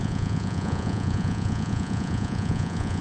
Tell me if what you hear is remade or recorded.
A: remade